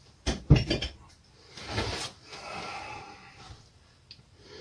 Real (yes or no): yes